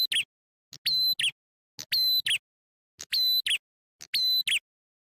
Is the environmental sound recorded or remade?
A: recorded